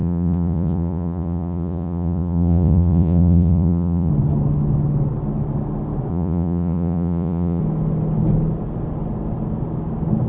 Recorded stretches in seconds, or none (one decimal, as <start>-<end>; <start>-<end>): 4.1-6.1; 7.6-10.3